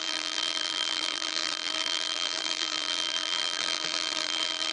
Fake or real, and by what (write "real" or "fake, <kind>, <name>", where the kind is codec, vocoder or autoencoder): fake, vocoder, BigVGAN v2